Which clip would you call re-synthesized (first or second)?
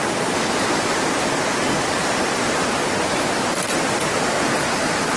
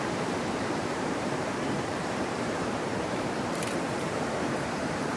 second